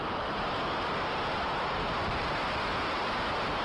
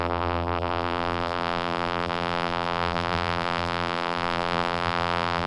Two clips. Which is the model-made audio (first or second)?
second